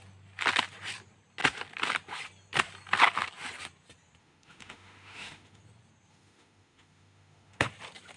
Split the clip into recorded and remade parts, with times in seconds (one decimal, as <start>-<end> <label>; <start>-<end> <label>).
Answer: 0.0-4.2 recorded; 4.2-5.6 remade; 5.6-6.1 recorded; 6.1-7.7 remade; 7.7-8.2 recorded